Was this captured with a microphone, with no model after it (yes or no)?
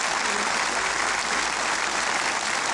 yes